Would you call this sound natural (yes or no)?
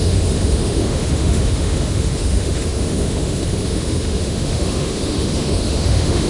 no